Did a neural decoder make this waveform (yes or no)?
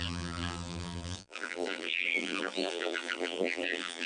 yes